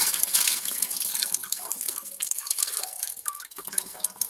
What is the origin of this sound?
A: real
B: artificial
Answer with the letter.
B